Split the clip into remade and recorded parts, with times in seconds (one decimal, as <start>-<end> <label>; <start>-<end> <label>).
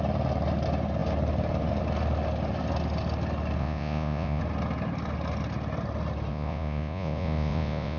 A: 0.0-3.6 recorded; 3.6-4.4 remade; 4.4-6.3 recorded; 6.3-8.0 remade